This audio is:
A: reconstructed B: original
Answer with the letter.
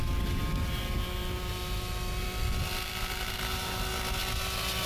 B